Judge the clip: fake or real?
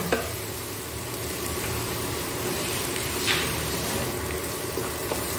fake